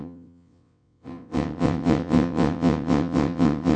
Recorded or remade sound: remade